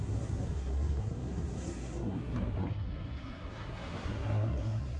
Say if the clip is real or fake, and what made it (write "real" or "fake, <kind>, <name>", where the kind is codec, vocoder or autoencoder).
fake, codec, SNAC